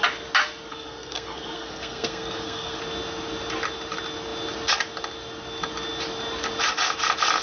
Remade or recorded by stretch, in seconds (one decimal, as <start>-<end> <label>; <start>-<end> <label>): 0.0-0.7 recorded; 0.7-2.8 remade; 2.8-7.4 recorded